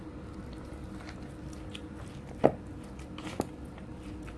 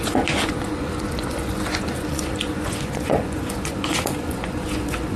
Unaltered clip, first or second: first